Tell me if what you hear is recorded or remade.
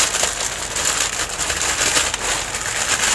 recorded